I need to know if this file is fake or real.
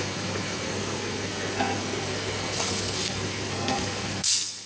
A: fake